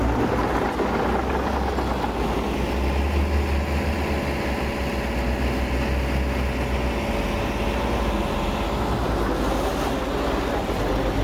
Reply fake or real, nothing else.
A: real